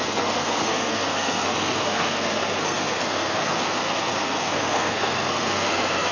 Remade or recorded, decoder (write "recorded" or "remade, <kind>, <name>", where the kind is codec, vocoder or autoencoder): remade, codec, SNAC